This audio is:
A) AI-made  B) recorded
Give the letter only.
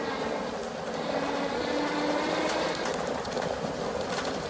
B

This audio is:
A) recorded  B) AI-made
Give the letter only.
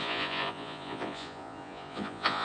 B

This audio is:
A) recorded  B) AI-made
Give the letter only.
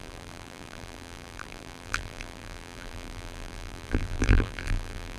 B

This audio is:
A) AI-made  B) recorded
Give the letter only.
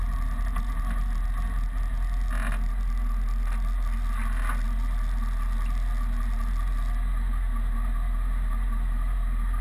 B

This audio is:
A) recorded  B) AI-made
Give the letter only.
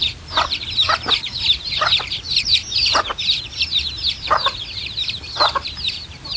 B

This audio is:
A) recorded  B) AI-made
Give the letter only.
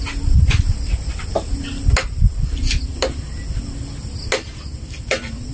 A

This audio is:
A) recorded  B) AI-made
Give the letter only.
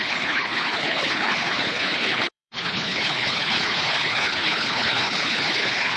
B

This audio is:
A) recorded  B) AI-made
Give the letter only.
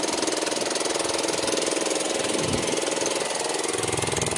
A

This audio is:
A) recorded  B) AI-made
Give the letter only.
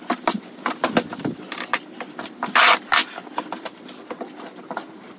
A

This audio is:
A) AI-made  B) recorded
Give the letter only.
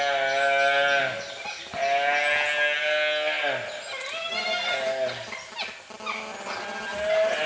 B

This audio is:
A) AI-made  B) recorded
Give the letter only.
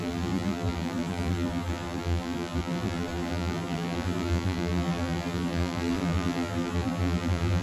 A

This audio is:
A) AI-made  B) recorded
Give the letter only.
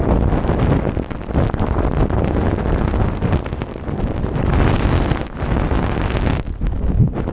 A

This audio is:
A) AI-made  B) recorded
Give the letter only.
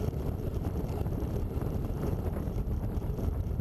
A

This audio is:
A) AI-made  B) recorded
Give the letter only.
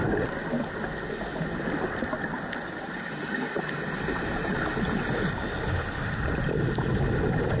B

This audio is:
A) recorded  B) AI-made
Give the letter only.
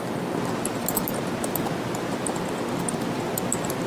A